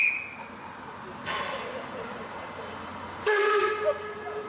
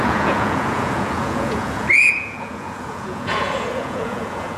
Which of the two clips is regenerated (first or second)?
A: second